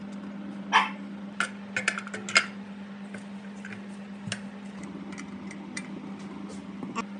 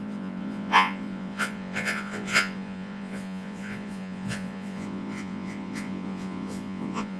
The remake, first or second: second